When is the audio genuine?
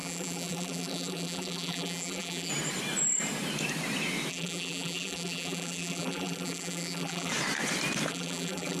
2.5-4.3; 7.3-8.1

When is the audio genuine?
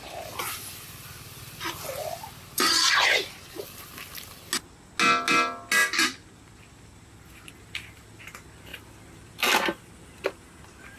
0.0-5.8; 7.5-8.7; 9.9-11.0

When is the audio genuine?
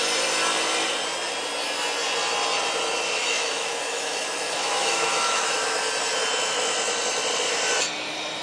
0.0-3.2; 5.8-8.4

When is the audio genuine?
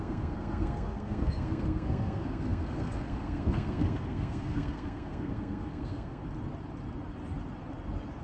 6.2-8.2